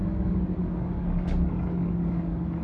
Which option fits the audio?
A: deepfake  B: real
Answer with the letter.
A